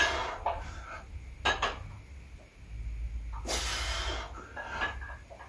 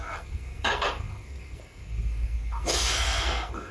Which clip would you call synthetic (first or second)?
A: second